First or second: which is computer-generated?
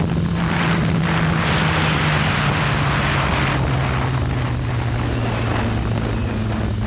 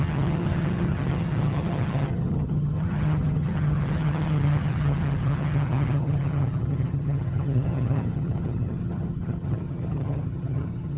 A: second